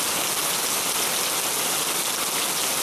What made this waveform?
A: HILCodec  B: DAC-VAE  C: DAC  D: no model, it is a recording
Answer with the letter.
D